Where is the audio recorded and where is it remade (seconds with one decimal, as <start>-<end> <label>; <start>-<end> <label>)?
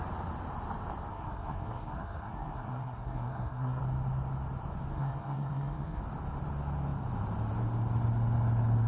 0.0-1.1 recorded; 1.1-3.8 remade; 3.8-4.9 recorded; 4.9-6.0 remade; 6.0-8.9 recorded